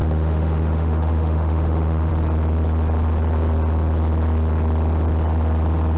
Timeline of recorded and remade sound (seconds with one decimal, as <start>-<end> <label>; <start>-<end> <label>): 0.0-2.1 remade; 2.1-6.0 recorded